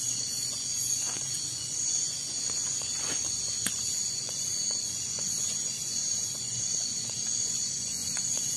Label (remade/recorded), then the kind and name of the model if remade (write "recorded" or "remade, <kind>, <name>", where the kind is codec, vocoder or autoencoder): remade, vocoder, Vocos